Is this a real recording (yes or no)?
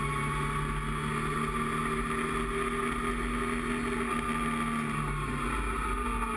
yes